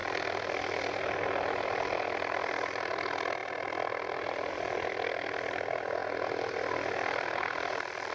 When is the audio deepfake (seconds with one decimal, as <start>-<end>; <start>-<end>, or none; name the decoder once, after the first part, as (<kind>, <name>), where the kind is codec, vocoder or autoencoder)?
none